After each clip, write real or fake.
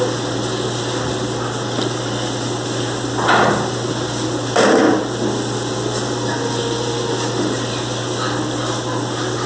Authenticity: real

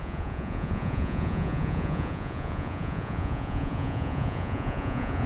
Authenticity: fake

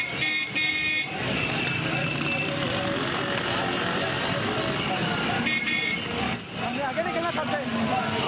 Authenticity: real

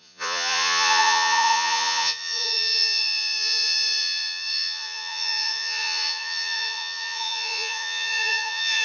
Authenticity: fake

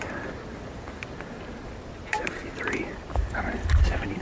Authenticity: fake